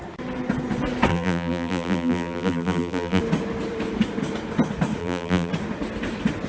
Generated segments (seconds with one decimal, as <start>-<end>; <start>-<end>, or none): 1.1-3.2; 5.0-5.5